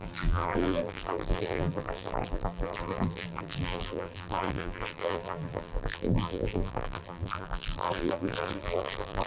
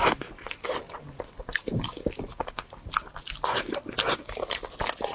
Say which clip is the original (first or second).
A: second